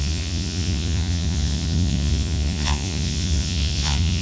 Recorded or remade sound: remade